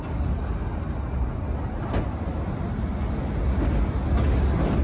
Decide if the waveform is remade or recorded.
recorded